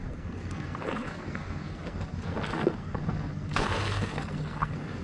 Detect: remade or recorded remade